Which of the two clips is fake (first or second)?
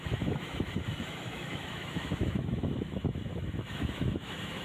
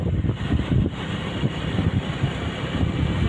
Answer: first